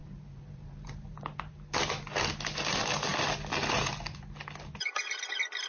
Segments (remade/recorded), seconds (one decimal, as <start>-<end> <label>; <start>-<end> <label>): 0.0-1.5 remade; 1.5-5.7 recorded